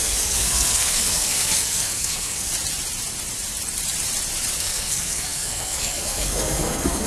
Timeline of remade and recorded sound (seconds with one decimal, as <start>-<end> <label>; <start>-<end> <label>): 0.0-2.5 remade; 2.5-4.6 recorded; 4.6-7.1 remade